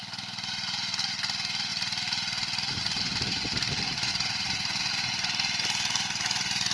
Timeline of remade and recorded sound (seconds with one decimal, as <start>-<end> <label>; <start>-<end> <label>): 0.0-1.7 recorded; 1.7-2.8 remade; 2.8-4.1 recorded; 4.1-4.9 remade; 4.9-6.7 recorded